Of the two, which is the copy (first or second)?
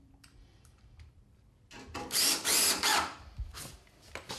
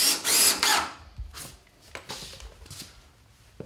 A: first